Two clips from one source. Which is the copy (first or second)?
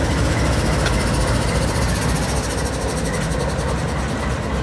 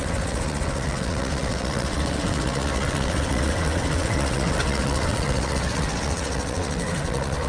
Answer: second